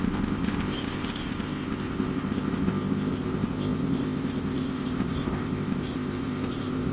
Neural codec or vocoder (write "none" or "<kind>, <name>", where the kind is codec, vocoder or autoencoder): codec, ZipCodec